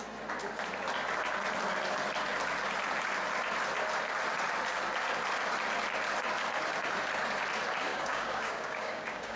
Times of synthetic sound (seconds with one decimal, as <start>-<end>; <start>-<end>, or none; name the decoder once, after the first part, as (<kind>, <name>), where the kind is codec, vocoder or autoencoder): 7.9-9.4 (codec, DAC)